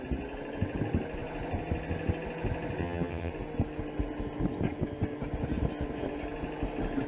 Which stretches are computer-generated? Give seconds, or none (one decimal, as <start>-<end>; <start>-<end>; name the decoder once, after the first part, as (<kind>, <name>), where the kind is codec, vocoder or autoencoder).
2.8-3.3 (vocoder, HiFi-GAN)